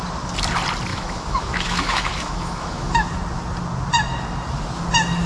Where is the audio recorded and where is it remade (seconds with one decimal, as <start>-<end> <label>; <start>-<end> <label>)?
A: 0.0-0.9 recorded; 0.9-3.1 remade; 3.1-5.3 recorded